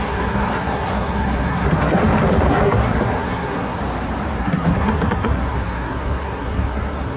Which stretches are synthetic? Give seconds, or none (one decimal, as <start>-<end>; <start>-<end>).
0.0-2.0; 2.5-3.8; 4.4-7.2